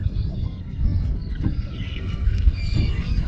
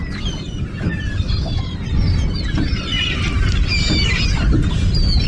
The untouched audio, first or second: second